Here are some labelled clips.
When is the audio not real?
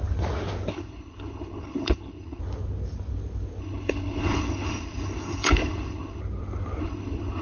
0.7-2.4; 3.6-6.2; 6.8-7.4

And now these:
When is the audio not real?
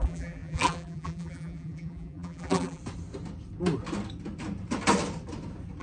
0.0-2.8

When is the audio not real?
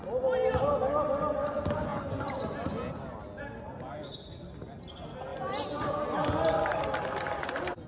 none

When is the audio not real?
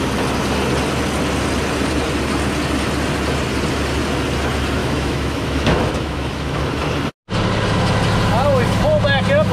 4.8-6.6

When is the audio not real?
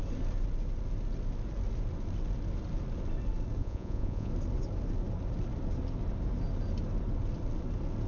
3.6-4.3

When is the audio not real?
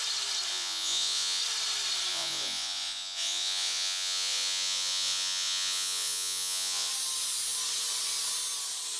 0.5-1.4; 2.1-6.9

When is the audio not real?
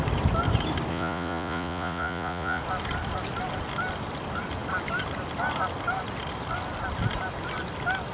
0.9-2.6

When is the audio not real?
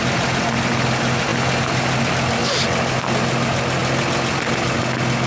none